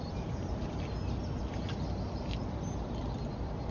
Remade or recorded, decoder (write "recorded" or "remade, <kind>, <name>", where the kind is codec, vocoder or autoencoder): recorded